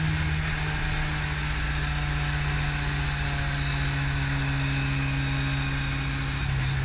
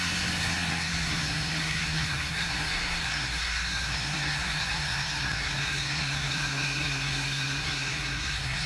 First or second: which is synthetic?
second